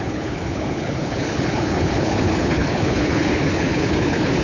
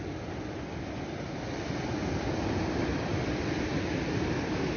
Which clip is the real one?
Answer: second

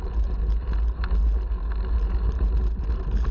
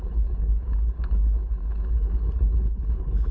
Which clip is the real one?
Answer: first